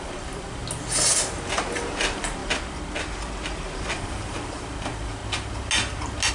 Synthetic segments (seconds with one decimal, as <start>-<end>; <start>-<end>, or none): 0.0-0.6; 1.5-2.4; 4.1-5.2